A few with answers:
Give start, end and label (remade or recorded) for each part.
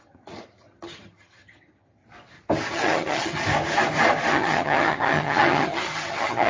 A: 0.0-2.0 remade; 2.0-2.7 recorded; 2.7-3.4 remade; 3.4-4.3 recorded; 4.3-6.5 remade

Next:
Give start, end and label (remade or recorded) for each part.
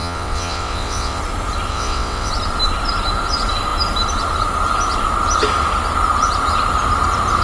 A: 0.0-1.2 remade; 1.2-1.7 recorded; 1.7-2.3 remade; 2.3-7.4 recorded